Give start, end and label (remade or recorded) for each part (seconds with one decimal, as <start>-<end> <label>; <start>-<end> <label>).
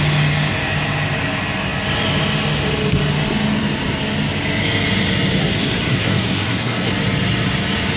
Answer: 0.0-5.4 recorded; 5.4-6.9 remade; 6.9-8.0 recorded